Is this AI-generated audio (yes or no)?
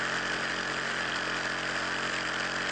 no